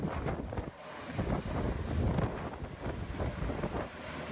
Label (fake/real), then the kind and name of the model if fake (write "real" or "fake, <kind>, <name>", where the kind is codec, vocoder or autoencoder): real